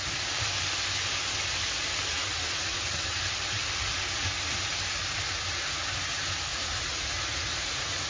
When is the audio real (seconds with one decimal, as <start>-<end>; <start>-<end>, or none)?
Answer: 0.0-2.2; 3.2-5.0; 5.8-6.5